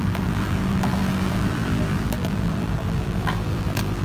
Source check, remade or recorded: remade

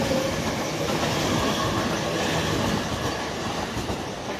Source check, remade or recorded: recorded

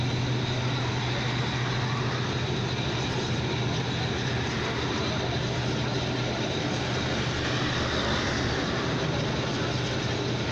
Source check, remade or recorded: recorded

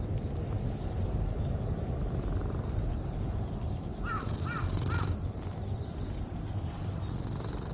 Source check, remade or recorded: recorded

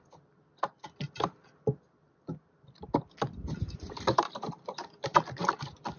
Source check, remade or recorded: remade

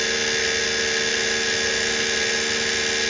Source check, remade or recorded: recorded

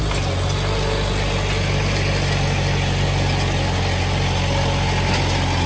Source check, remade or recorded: recorded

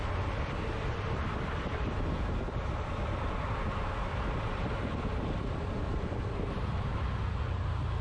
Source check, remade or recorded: remade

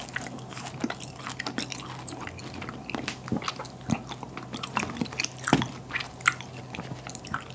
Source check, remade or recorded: recorded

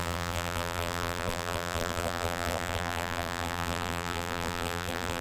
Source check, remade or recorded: remade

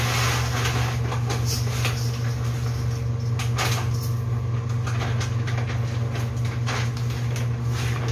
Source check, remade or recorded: recorded